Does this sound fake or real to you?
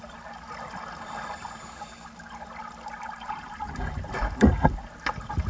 real